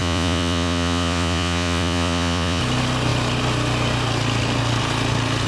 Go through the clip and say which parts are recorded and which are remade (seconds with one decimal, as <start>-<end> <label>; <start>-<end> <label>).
0.0-2.6 remade; 2.6-5.5 recorded